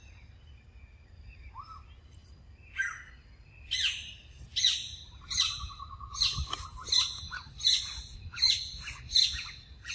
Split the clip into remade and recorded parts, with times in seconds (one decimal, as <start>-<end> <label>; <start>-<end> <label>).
0.0-9.9 recorded